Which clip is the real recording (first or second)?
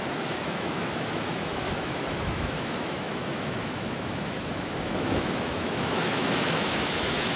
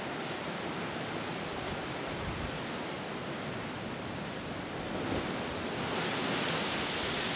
second